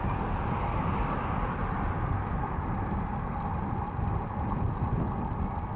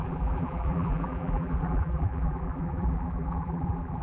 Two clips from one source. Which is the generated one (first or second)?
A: second